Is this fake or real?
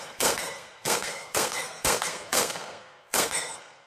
fake